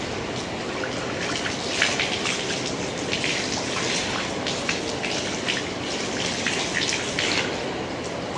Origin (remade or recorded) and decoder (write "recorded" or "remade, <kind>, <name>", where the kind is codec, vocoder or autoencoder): recorded